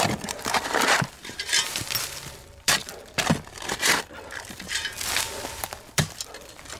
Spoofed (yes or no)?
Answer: yes